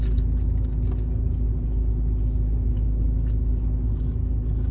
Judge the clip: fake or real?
real